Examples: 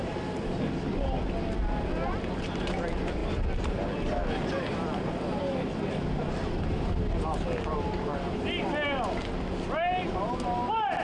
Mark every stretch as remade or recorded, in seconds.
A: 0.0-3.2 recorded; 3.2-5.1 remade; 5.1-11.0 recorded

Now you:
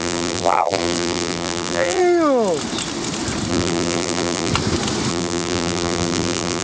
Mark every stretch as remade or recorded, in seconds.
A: 0.0-2.0 remade; 2.0-3.5 recorded; 3.5-4.5 remade; 4.5-5.1 recorded; 5.1-6.6 remade